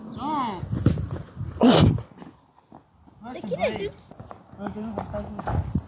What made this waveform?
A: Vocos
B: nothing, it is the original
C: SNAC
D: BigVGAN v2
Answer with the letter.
B